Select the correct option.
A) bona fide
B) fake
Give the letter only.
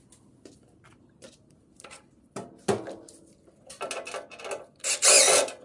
A